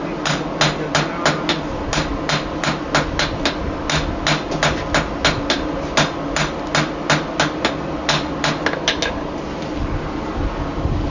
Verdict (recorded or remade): recorded